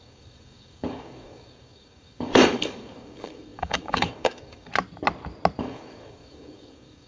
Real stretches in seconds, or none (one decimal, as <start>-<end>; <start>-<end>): 4.7-5.6